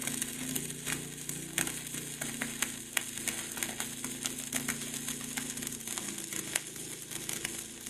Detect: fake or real real